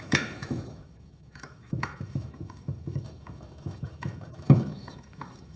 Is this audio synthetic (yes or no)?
yes